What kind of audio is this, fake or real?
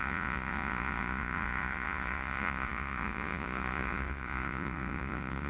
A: fake